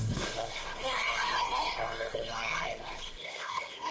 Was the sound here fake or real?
fake